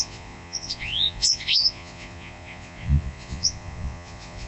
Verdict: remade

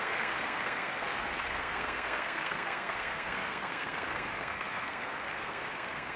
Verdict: remade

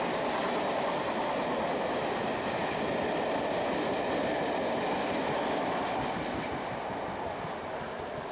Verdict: recorded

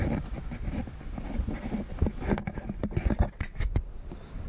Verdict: remade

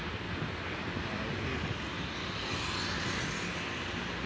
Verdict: recorded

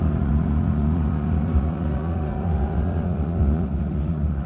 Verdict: remade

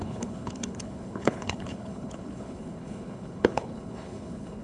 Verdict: remade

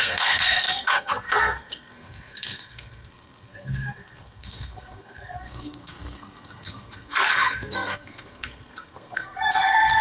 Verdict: remade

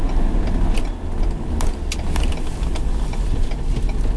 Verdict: recorded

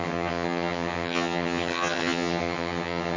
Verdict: remade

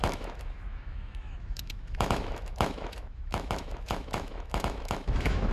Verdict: remade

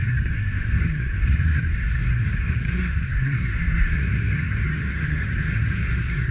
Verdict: remade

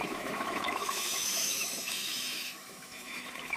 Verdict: remade